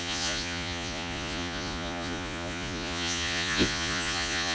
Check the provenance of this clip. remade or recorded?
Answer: remade